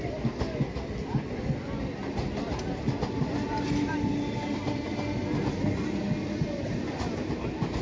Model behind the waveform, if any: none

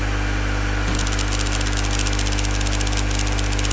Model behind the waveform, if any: none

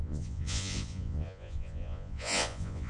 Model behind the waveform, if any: vocoder, Vocos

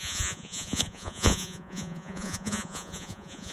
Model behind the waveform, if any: vocoder, Vocos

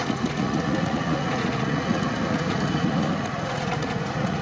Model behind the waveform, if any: vocoder, Vocos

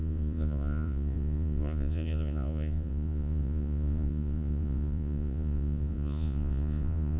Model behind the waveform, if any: vocoder, Vocos